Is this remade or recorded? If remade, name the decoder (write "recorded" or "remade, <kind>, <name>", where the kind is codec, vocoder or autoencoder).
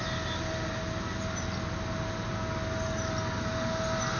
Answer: recorded